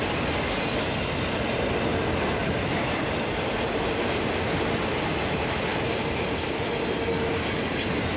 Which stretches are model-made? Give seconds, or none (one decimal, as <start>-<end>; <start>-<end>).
2.4-3.0